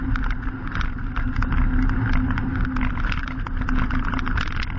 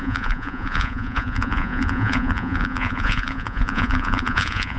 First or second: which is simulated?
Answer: second